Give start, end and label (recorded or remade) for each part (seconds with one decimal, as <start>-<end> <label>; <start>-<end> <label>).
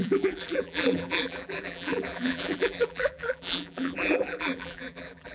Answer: 0.0-5.3 remade